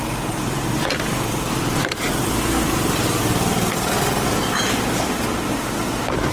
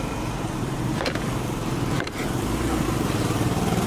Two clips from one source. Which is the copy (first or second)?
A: second